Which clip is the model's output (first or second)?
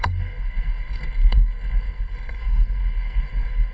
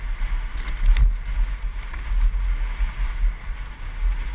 first